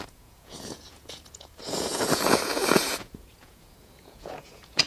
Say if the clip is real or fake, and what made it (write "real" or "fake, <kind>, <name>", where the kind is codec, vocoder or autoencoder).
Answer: fake, vocoder, Vocos